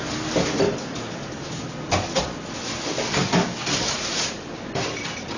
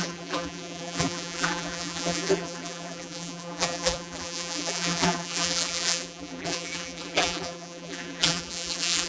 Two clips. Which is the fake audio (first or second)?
second